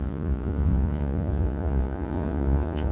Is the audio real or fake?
fake